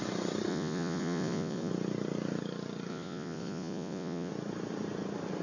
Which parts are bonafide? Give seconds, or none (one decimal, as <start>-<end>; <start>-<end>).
0.0-0.5; 1.7-2.9; 4.3-5.4